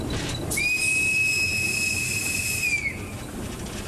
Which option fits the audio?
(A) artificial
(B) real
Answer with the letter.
B